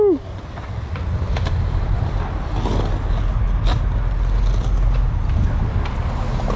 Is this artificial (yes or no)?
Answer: no